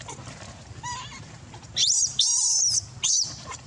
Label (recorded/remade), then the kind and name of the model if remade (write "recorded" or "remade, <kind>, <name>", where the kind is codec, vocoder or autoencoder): recorded